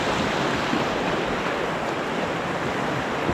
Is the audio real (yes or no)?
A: yes